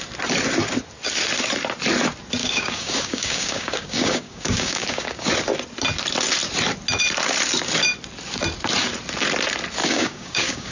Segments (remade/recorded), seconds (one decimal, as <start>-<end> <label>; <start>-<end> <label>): 0.0-2.4 recorded; 2.4-5.3 remade; 5.3-9.8 recorded; 9.8-10.7 remade

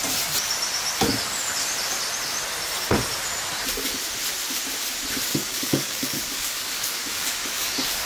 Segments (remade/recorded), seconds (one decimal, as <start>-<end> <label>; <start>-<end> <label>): 0.0-5.3 recorded; 5.3-8.1 remade